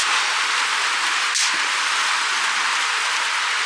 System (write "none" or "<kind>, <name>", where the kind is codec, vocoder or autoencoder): none